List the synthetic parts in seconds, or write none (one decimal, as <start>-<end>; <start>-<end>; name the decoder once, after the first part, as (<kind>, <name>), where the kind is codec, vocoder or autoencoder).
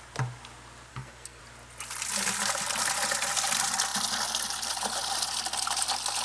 0.9-1.4 (codec, SNAC)